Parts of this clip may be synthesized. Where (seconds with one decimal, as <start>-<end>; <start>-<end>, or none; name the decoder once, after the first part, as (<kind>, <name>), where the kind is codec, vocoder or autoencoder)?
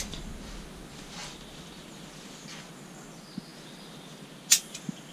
none